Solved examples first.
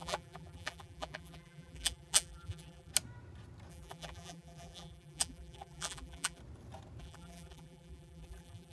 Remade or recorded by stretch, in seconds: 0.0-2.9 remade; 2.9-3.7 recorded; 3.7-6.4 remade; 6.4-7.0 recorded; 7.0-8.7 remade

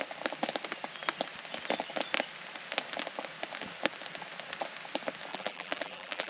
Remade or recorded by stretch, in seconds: 0.0-5.3 recorded; 5.3-6.3 remade

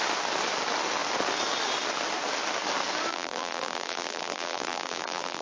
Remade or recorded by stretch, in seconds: 0.0-3.1 recorded; 3.1-5.4 remade

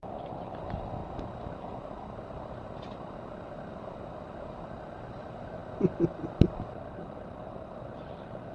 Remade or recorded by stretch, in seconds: 0.0-5.6 recorded; 5.6-8.1 remade; 8.1-8.5 recorded

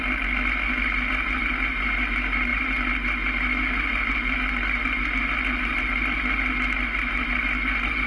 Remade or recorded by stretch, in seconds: 0.0-8.1 recorded